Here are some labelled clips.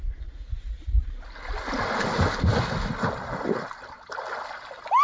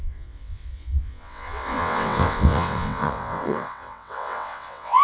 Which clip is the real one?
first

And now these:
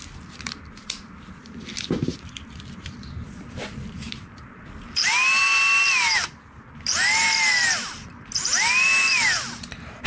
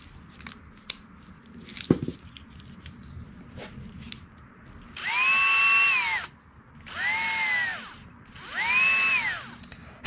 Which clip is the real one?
second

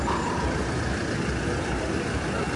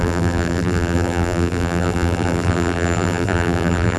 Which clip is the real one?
first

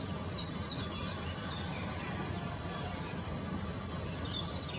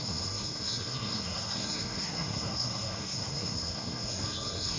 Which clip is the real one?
first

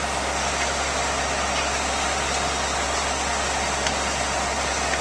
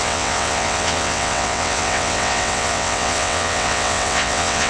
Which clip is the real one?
first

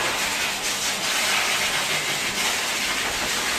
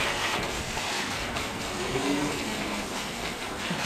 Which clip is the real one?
first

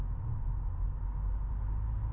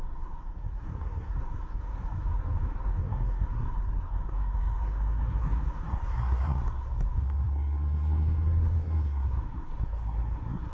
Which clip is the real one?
first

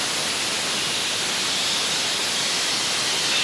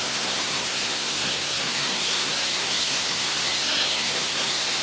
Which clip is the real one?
first